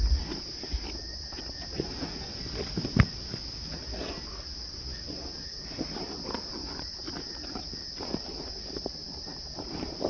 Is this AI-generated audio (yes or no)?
no